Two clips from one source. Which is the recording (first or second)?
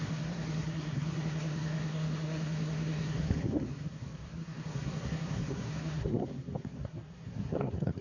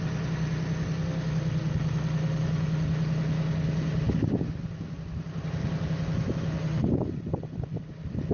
second